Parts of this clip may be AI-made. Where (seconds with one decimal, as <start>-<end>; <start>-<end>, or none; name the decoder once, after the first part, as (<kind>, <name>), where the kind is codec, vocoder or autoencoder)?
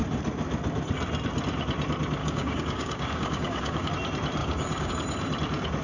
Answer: 2.2-3.9 (codec, DAC); 4.4-4.9